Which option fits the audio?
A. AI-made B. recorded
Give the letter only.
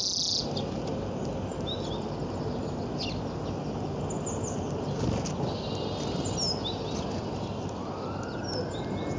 B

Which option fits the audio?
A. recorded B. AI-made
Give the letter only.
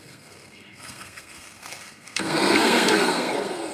B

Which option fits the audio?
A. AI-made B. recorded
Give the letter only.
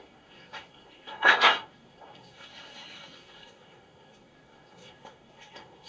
A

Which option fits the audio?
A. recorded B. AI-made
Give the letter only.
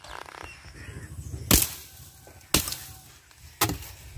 A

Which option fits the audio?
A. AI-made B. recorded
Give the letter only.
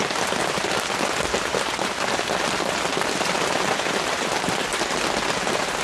B